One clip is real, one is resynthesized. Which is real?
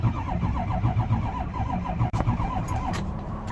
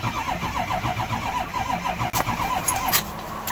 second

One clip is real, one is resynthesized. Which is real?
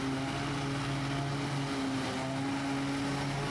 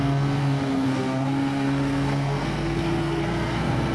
first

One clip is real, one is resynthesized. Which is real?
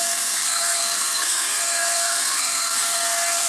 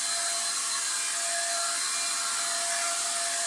second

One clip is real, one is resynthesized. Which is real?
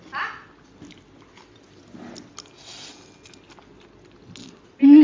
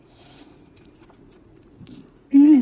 first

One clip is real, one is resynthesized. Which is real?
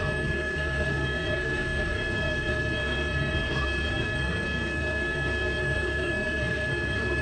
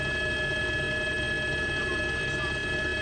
second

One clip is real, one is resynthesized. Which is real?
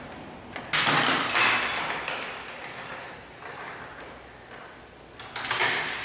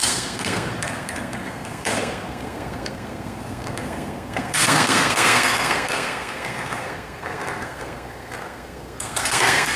first